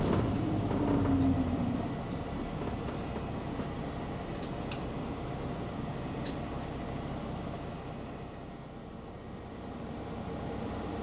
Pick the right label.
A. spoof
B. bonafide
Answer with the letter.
B